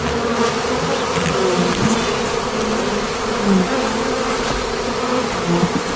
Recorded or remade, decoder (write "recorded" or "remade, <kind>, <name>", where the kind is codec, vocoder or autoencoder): recorded